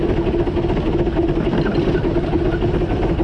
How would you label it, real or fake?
real